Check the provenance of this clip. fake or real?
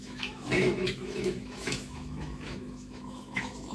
fake